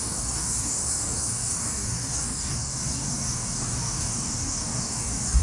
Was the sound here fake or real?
fake